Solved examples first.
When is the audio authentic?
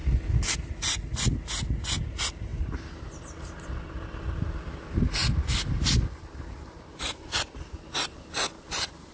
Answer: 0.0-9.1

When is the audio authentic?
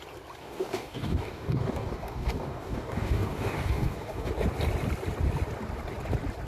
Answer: 0.0-0.4; 4.3-6.5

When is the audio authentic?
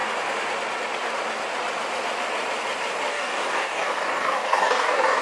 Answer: 0.0-3.1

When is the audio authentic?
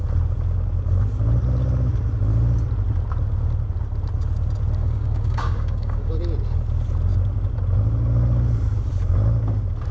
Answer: 0.0-4.8; 6.2-9.9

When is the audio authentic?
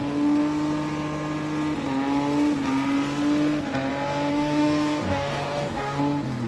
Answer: 0.0-4.3; 6.0-6.5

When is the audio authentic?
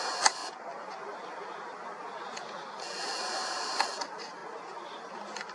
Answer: 0.0-5.5